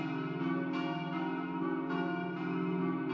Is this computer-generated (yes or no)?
no